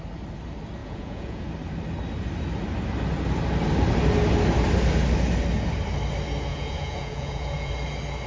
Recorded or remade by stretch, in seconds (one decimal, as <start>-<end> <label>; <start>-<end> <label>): 0.0-0.8 recorded; 0.8-1.4 remade; 1.4-6.5 recorded; 6.5-7.7 remade; 7.7-8.3 recorded